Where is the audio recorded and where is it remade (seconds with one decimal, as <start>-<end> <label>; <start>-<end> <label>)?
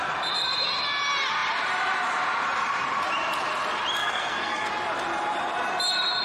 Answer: 0.0-4.0 recorded; 4.0-4.7 remade; 4.7-6.2 recorded